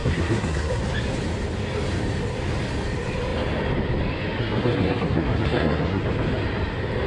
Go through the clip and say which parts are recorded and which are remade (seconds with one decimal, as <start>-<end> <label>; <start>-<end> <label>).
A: 0.0-0.8 remade; 0.8-4.4 recorded; 4.4-6.0 remade; 6.0-7.1 recorded